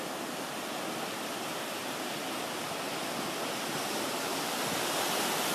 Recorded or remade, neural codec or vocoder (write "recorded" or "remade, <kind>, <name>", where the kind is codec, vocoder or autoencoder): recorded